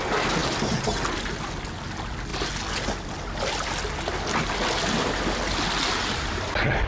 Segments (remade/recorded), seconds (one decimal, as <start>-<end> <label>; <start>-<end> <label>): 0.0-6.9 recorded